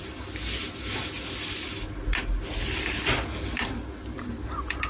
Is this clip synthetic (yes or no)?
no